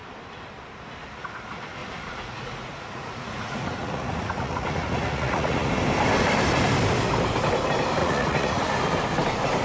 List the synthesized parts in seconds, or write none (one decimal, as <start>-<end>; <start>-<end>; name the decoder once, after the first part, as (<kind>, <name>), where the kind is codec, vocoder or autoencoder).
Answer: 1.8-5.7 (vocoder, Vocos); 8.0-8.7